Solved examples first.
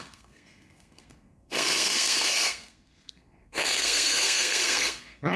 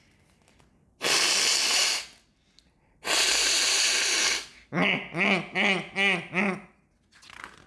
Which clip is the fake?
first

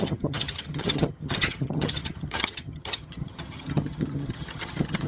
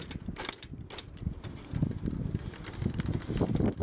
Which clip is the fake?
first